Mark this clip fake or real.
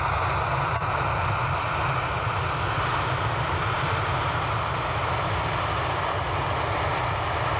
real